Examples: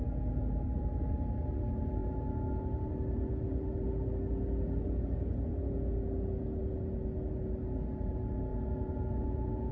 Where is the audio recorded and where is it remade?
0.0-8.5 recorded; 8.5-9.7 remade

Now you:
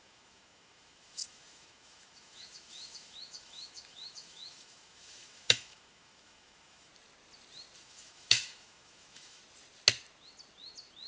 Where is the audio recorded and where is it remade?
0.0-6.9 remade; 6.9-7.8 recorded; 7.8-9.4 remade; 9.4-11.1 recorded

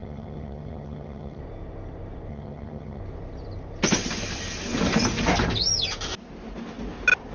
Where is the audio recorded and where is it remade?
0.0-1.4 remade; 1.4-2.3 recorded; 2.3-3.0 remade; 3.0-7.3 recorded

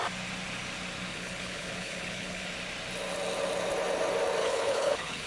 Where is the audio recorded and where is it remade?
0.0-1.1 recorded; 1.1-2.5 remade; 2.5-4.4 recorded; 4.4-5.3 remade

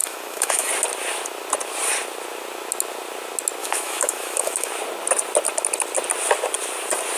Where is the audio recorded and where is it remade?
0.0-0.7 remade; 0.7-3.6 recorded; 3.6-4.7 remade; 4.7-7.2 recorded

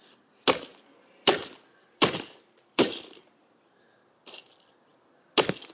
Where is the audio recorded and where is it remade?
0.0-0.7 recorded; 0.7-3.3 remade; 3.3-5.7 recorded

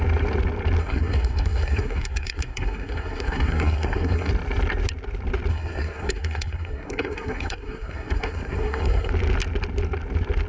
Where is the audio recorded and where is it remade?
0.0-0.8 recorded; 0.8-4.3 remade; 4.3-5.5 recorded; 5.5-9.1 remade; 9.1-10.5 recorded